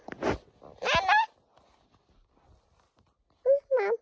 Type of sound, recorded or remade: recorded